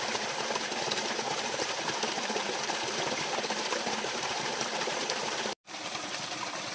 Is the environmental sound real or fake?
fake